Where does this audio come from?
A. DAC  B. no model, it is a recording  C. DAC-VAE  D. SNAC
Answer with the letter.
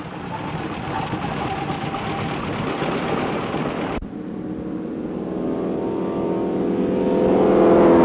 B